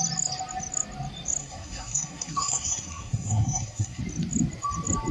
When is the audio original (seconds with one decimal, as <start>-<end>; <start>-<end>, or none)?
0.0-1.4; 4.0-5.1